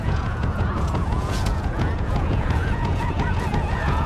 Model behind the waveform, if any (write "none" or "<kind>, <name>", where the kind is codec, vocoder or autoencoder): vocoder, Vocos